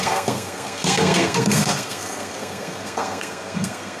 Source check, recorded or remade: remade